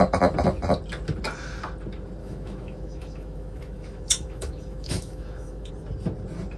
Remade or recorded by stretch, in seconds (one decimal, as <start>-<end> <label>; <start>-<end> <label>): 0.0-2.2 recorded; 2.2-5.7 remade; 5.7-6.6 recorded